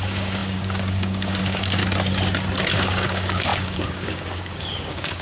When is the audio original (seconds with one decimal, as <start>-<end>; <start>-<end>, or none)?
1.8-2.7